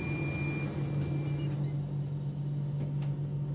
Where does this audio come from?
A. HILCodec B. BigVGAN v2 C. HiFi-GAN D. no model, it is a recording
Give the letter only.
D